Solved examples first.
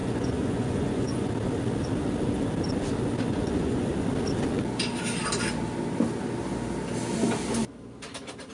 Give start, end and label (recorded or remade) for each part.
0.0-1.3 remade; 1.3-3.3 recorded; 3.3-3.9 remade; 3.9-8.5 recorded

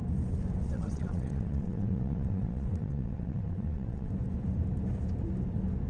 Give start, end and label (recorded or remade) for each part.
0.0-0.6 recorded; 0.6-4.1 remade; 4.1-5.9 recorded

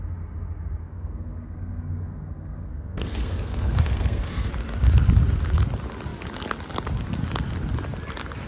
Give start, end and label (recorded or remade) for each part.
0.0-0.8 recorded; 0.8-4.5 remade; 4.5-8.5 recorded

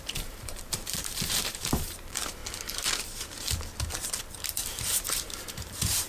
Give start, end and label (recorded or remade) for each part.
0.0-2.4 remade; 2.4-4.2 recorded; 4.2-6.1 remade

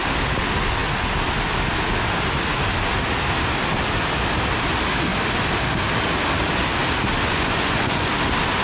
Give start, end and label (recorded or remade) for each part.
0.0-7.3 recorded; 7.3-8.1 remade; 8.1-8.6 recorded